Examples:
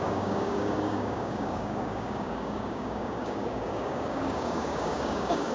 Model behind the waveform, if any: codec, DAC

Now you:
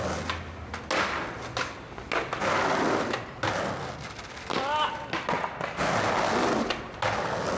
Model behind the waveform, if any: none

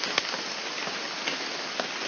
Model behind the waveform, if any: none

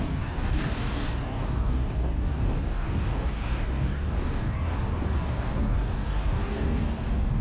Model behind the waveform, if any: codec, DAC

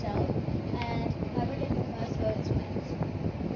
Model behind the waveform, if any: none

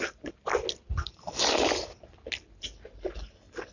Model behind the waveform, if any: none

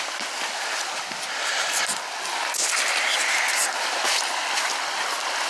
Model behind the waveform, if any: none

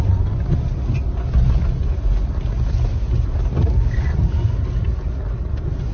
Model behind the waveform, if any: none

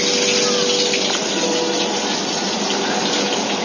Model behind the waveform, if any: none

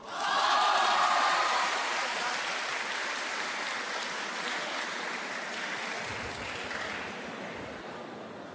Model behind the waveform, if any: none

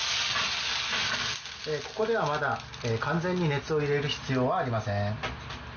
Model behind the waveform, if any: none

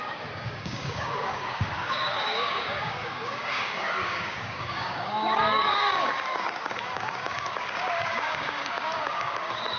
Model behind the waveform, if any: codec, DAC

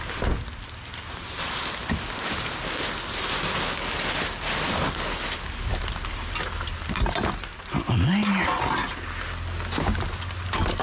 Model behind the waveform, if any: none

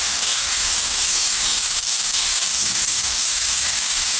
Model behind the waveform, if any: codec, DAC